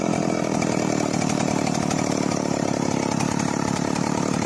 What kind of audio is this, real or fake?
fake